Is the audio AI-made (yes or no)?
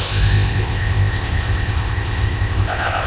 yes